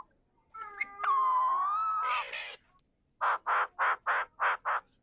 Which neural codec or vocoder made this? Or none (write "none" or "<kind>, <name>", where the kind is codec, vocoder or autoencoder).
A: none